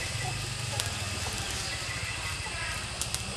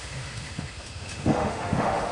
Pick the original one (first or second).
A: first